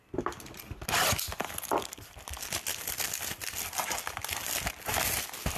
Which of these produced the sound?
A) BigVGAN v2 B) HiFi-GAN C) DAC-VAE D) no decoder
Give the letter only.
D